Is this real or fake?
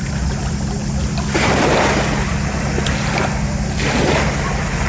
real